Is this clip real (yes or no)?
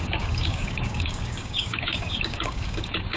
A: no